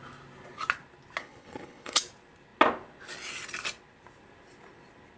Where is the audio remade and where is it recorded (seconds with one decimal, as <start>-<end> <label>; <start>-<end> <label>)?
0.0-1.2 recorded; 1.2-2.0 remade; 2.0-5.2 recorded